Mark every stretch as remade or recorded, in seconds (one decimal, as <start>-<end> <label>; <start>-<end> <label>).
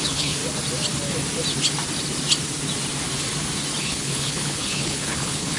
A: 0.0-0.4 remade; 0.4-3.8 recorded; 3.8-5.6 remade